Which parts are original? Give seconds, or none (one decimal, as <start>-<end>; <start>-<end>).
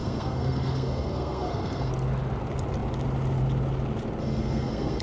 1.9-4.2